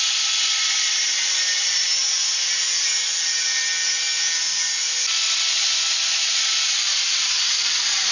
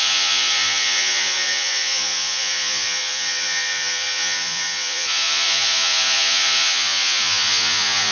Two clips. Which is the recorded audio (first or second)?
first